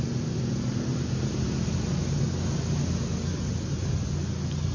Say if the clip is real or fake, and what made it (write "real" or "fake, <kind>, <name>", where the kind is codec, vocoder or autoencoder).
real